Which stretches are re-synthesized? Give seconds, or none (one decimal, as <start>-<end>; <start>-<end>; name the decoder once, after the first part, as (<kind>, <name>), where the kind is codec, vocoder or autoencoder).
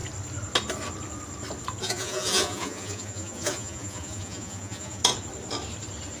1.8-5.0 (vocoder, Vocos)